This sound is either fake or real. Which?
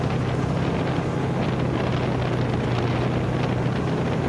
real